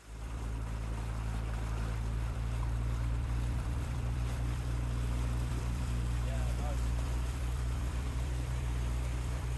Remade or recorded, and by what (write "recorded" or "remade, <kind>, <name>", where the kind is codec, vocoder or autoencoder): remade, vocoder, BigVGAN v2